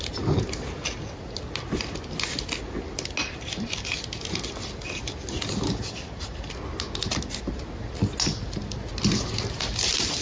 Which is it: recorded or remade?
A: recorded